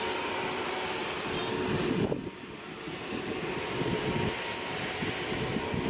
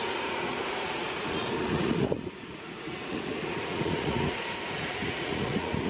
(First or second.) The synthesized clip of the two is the second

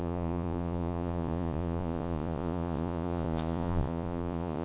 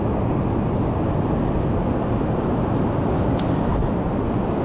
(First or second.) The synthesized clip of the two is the first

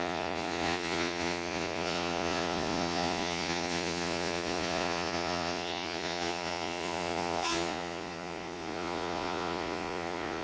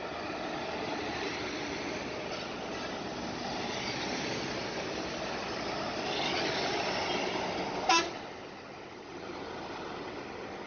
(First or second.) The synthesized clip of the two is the first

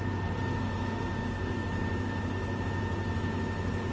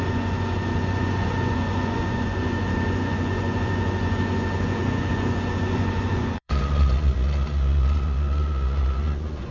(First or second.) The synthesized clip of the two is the second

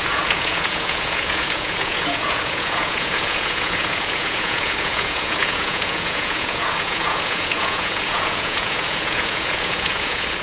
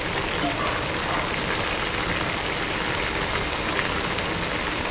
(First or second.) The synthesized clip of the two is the first